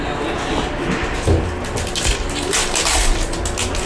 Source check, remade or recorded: recorded